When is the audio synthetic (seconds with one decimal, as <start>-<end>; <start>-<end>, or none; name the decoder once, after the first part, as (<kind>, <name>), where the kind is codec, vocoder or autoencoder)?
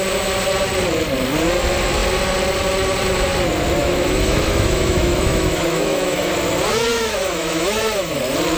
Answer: 3.8-6.3 (autoencoder, DAC-VAE); 6.9-8.2